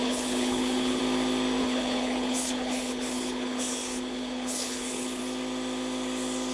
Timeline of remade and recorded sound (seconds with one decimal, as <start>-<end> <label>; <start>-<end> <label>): 0.0-1.0 remade; 1.0-1.6 recorded; 1.6-5.2 remade; 5.2-6.5 recorded

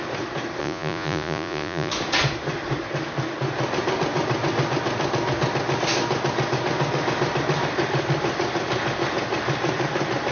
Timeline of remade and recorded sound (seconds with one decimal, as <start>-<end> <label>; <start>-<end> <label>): 0.0-0.6 recorded; 0.6-1.9 remade; 1.9-10.3 recorded